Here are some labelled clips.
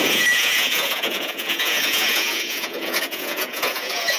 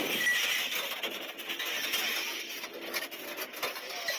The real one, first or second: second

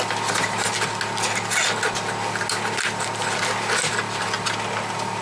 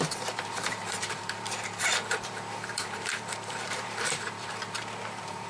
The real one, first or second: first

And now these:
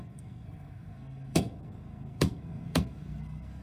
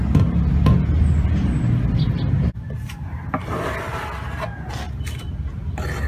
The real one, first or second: second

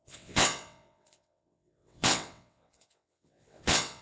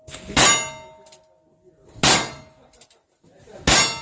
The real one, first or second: second